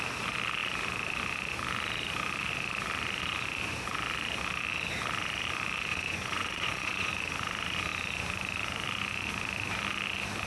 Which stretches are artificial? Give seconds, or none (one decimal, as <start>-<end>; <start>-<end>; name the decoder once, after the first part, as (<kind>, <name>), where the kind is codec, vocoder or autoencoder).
5.9-7.1 (vocoder, Vocos)